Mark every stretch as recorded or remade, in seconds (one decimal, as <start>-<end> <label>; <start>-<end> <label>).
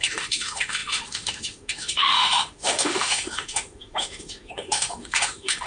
0.0-5.7 remade